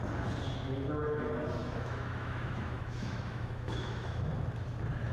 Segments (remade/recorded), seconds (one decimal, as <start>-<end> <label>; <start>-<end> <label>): 0.0-1.6 recorded; 1.6-4.3 remade; 4.3-5.1 recorded